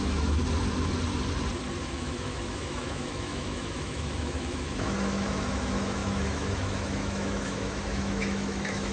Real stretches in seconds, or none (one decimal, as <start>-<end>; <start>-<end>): 0.4-1.8